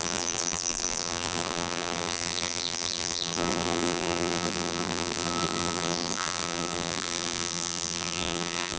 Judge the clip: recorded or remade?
remade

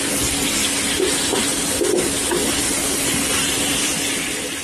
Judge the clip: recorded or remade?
recorded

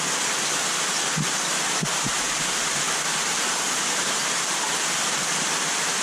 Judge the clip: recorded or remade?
remade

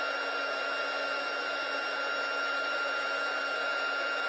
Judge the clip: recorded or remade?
recorded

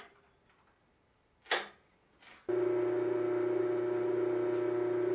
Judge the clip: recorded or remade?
recorded